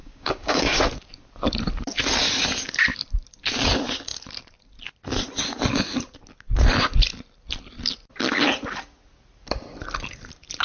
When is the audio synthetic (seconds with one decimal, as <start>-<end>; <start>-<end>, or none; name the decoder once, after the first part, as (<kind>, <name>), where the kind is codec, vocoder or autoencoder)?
0.0-0.8 (codec, DAC)